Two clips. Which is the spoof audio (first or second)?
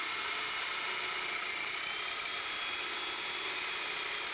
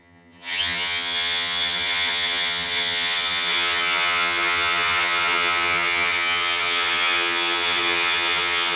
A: second